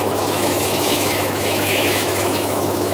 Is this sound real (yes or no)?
no